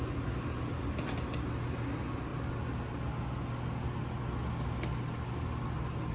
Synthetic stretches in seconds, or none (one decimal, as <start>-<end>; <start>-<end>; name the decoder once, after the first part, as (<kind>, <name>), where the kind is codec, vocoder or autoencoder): none